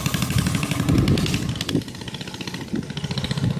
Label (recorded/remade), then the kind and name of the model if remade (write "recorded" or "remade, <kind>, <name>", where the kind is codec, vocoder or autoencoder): recorded